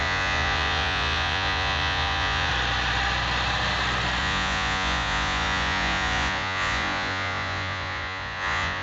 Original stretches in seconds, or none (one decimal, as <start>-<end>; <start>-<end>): 2.5-4.2